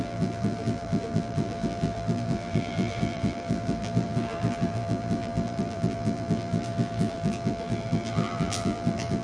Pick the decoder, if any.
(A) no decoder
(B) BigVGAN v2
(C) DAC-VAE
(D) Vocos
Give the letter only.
B